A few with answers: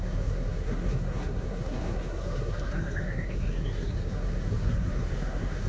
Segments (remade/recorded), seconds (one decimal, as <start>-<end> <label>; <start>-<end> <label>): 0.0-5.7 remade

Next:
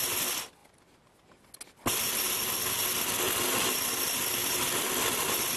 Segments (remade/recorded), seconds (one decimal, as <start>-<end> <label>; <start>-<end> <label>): 0.0-5.6 recorded

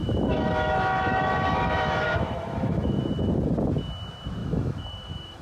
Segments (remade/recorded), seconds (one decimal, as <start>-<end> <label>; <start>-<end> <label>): 0.0-3.0 remade; 3.0-4.4 recorded; 4.4-5.4 remade

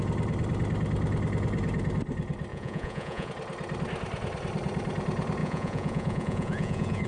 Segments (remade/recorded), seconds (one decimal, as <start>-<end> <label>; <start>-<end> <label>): 0.0-2.5 recorded; 2.5-3.3 remade; 3.3-5.4 recorded; 5.4-7.1 remade

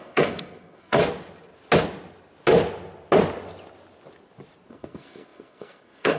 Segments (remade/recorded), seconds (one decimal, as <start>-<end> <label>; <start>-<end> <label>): 0.0-1.0 remade; 1.0-4.7 recorded; 4.7-6.2 remade

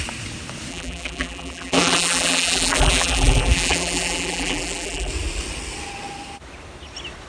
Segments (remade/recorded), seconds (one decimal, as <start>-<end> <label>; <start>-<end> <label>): 0.0-0.7 recorded; 0.7-5.1 remade; 5.1-7.3 recorded

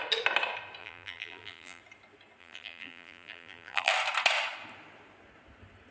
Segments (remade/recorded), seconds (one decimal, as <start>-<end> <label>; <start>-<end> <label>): 0.0-0.8 recorded; 0.8-1.8 remade; 1.8-2.4 recorded; 2.4-3.9 remade; 3.9-5.9 recorded

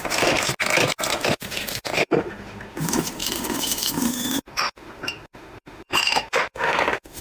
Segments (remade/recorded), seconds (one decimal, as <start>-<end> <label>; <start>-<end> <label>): 0.0-0.5 remade; 0.5-1.1 recorded; 1.1-7.2 remade